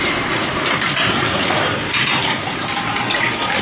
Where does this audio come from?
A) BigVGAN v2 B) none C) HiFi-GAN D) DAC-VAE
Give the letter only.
A